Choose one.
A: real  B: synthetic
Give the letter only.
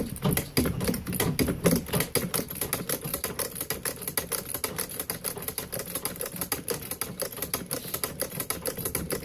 A